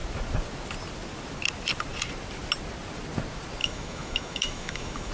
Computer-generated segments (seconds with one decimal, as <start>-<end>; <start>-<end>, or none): 3.6-5.1